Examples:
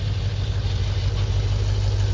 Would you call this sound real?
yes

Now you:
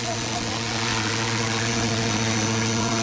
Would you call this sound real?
no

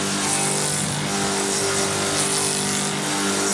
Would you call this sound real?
yes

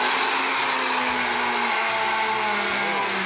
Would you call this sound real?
yes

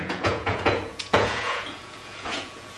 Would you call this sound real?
no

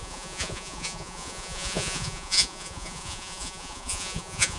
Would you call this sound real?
no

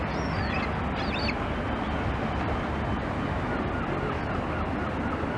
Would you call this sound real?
yes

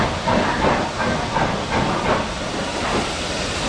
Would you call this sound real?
yes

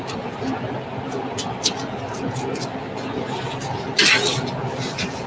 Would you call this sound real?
yes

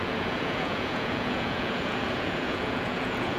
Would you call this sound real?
no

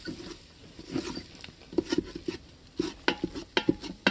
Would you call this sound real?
yes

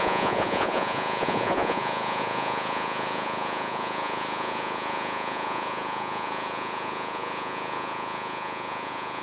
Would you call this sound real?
no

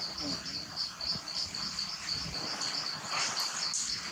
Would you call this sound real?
yes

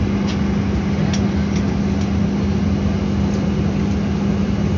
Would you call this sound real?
yes